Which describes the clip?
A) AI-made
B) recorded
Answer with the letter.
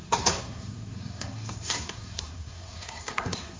A